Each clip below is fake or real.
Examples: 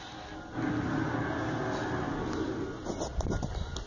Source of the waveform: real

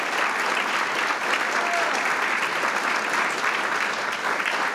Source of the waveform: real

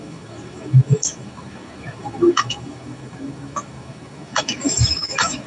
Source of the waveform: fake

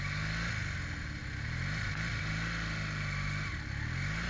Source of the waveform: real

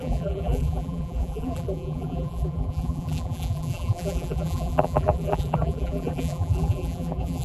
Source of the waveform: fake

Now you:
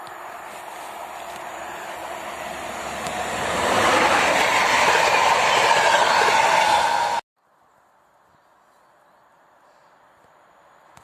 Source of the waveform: real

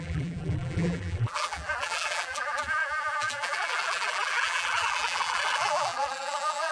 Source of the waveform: fake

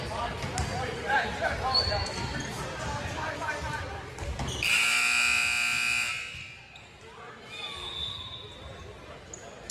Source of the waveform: real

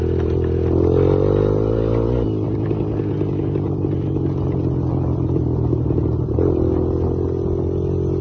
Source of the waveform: real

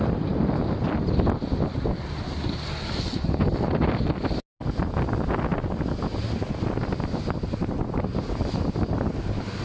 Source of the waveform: real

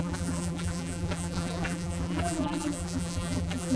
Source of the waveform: fake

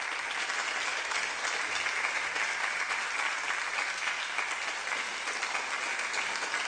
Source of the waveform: real